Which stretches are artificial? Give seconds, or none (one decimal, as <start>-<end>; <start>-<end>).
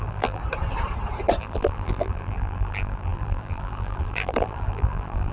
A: 0.0-0.4; 1.4-5.3